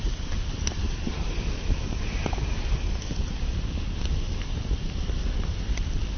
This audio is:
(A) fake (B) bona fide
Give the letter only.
B